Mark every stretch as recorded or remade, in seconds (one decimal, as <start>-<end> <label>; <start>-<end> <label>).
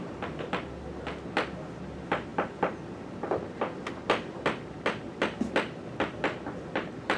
0.0-7.2 recorded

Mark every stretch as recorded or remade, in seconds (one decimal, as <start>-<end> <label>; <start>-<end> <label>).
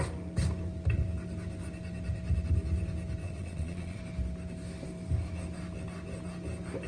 0.0-3.2 recorded; 3.2-4.0 remade; 4.0-6.9 recorded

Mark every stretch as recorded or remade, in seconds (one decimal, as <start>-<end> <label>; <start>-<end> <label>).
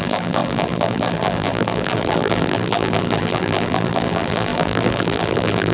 0.0-5.7 remade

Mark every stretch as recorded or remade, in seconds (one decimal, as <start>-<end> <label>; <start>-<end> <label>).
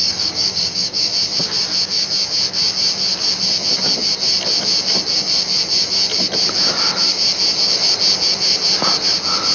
0.0-1.1 remade; 1.1-9.5 recorded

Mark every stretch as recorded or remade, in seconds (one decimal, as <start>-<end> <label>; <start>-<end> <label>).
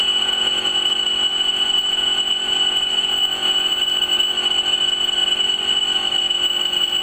0.0-0.7 remade; 0.7-1.3 recorded; 1.3-3.7 remade; 3.7-7.0 recorded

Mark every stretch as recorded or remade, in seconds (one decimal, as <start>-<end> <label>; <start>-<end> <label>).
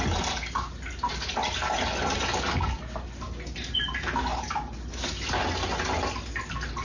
0.0-6.8 recorded